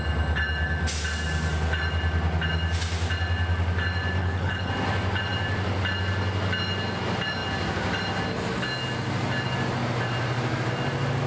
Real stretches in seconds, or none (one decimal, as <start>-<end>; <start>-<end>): 0.0-4.2; 4.7-11.3